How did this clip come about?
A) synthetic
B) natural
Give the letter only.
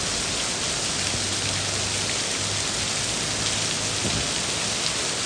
B